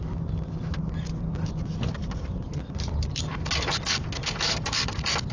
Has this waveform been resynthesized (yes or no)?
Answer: no